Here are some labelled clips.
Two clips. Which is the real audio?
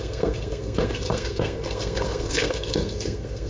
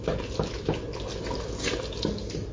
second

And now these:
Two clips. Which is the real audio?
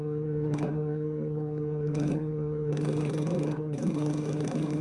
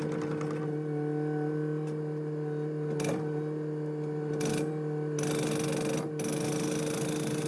second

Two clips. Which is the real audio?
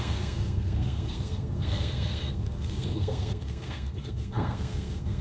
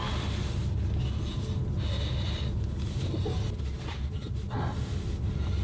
second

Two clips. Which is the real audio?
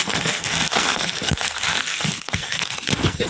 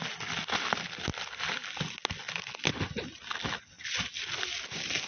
second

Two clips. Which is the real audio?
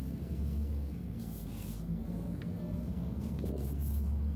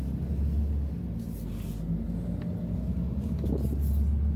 second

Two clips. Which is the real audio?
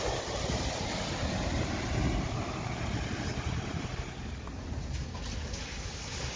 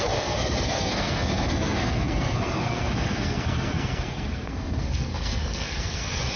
first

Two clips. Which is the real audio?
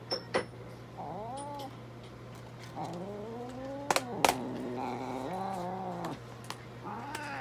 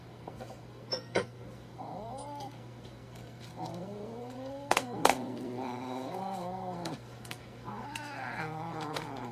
first